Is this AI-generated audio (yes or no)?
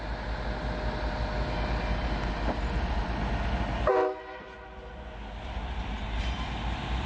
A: no